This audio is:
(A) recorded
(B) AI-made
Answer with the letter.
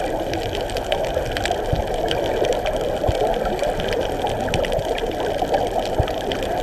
B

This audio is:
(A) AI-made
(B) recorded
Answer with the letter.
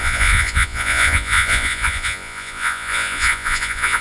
A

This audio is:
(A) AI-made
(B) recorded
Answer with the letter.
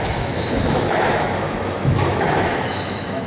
A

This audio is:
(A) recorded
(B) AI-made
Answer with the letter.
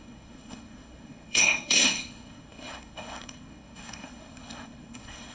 B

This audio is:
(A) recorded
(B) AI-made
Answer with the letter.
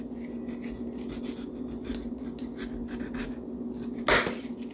A